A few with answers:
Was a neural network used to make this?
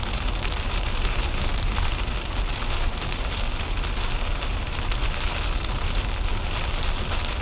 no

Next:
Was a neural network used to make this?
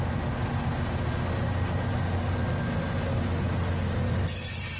no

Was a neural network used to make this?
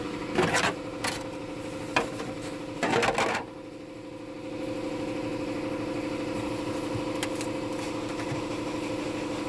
no